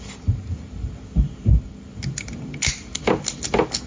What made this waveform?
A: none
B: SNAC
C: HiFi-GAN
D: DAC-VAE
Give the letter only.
A